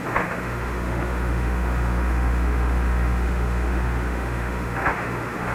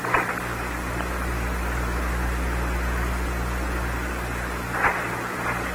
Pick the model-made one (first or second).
first